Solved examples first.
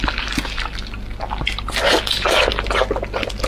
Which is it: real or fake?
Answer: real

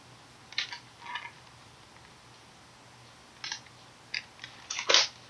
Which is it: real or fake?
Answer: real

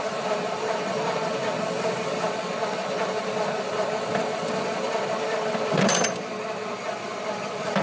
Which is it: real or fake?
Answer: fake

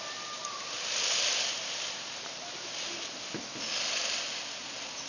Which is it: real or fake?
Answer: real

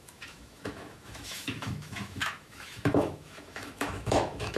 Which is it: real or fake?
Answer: fake